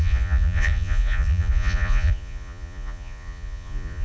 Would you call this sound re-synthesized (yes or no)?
yes